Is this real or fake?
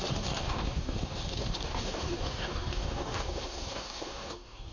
fake